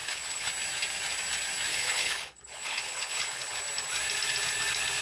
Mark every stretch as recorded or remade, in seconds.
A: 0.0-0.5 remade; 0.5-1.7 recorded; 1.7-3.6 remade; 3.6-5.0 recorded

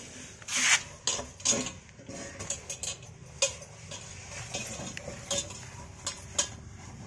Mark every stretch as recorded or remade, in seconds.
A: 0.0-7.1 recorded

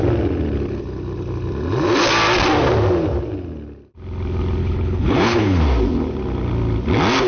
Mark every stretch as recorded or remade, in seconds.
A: 0.0-4.6 recorded; 4.6-5.6 remade; 5.6-7.3 recorded

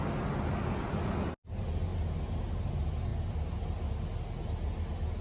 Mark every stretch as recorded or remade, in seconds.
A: 0.0-5.2 recorded

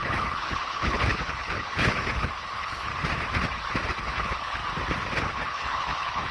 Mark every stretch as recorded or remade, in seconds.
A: 0.0-2.9 remade; 2.9-4.0 recorded; 4.0-4.6 remade; 4.6-5.2 recorded; 5.2-6.3 remade